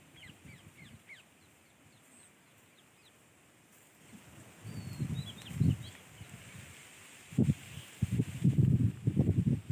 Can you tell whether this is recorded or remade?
recorded